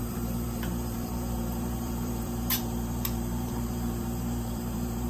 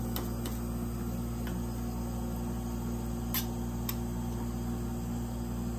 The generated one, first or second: first